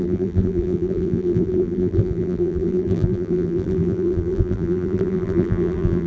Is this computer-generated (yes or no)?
yes